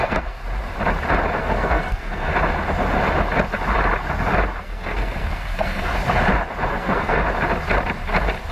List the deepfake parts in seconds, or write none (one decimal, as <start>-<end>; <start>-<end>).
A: 0.0-0.4; 1.4-2.3; 4.6-5.9; 6.7-7.2